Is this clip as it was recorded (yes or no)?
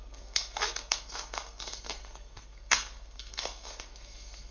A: no